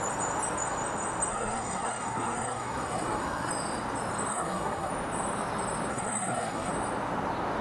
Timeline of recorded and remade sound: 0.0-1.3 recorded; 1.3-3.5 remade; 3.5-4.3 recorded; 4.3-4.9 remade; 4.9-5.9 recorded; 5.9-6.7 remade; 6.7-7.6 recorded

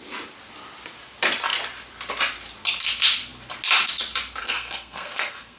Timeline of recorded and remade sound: 0.0-4.4 recorded; 4.4-5.6 remade

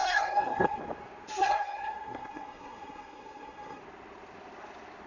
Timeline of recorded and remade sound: 0.0-0.8 remade; 0.8-1.4 recorded; 1.4-3.8 remade; 3.8-5.1 recorded

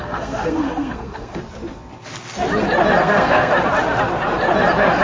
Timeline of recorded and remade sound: 0.0-1.4 remade; 1.4-3.0 recorded; 3.0-3.5 remade; 3.5-5.0 recorded

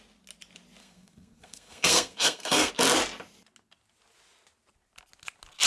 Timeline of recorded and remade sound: 0.0-0.8 recorded; 0.8-2.7 remade; 2.7-5.7 recorded